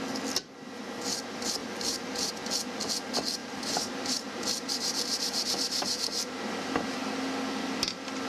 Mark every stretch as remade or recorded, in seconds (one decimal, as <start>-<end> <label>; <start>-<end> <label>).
0.0-1.6 recorded; 1.6-2.3 remade; 2.3-3.4 recorded; 3.4-6.4 remade; 6.4-8.3 recorded